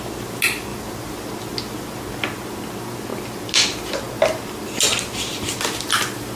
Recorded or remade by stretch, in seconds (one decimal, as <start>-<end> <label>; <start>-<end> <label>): 0.0-6.4 recorded